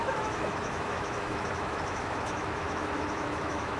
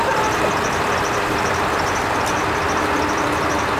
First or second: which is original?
second